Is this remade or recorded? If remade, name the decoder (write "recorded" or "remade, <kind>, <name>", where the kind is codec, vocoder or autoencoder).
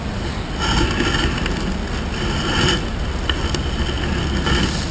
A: recorded